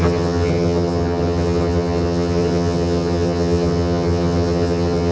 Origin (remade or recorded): remade